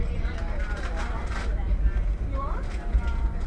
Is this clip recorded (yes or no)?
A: yes